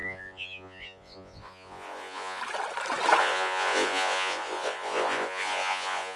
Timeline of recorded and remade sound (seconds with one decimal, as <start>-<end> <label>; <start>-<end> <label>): 0.0-2.4 remade; 2.4-3.2 recorded; 3.2-6.2 remade